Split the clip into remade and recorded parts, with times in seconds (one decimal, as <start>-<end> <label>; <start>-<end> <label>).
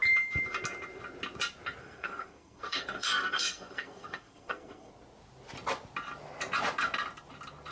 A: 0.0-1.8 recorded; 1.8-4.9 remade; 4.9-7.7 recorded